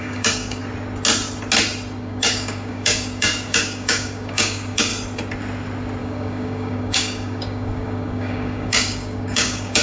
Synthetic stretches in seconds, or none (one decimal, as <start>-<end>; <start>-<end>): 0.0-0.6; 2.0-4.9; 6.0-9.8